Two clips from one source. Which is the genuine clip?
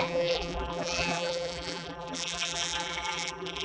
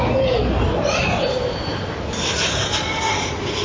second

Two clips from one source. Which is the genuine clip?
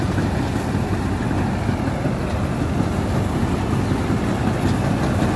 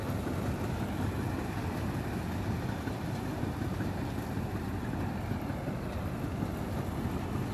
first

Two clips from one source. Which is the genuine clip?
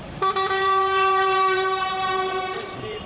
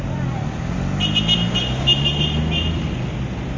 second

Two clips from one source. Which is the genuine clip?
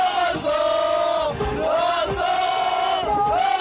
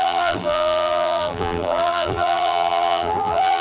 first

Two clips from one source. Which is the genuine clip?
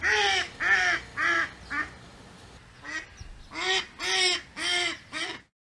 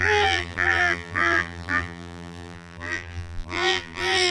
first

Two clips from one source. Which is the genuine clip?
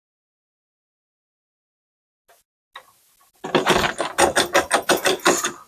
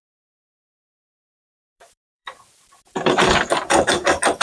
first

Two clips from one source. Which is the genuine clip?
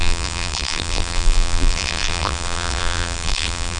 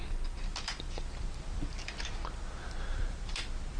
second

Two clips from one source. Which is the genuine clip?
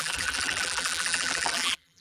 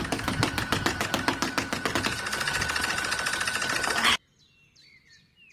second